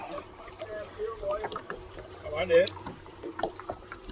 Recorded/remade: remade